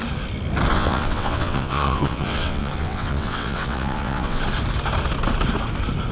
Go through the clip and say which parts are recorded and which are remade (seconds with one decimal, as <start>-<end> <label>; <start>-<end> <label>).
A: 0.0-0.7 recorded; 0.7-4.4 remade; 4.4-6.1 recorded